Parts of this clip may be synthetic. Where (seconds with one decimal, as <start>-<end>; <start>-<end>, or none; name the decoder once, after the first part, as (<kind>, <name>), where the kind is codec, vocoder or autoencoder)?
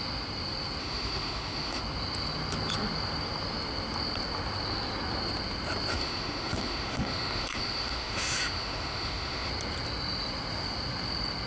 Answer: 0.8-1.8 (autoencoder, DAC-VAE); 5.9-9.5